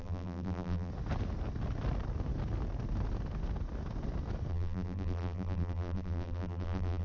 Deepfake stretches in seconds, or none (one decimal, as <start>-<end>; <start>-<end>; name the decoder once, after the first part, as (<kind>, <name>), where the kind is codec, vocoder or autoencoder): 0.0-0.9 (vocoder, BigVGAN v2); 4.5-7.0